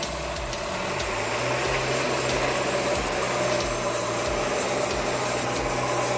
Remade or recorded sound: recorded